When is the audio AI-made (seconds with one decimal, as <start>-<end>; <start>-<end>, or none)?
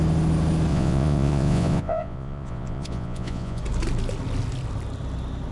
0.7-3.6